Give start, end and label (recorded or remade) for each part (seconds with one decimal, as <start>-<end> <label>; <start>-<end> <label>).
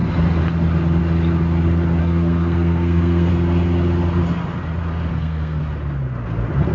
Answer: 0.0-2.0 recorded; 2.0-3.3 remade; 3.3-5.1 recorded; 5.1-5.6 remade; 5.6-6.7 recorded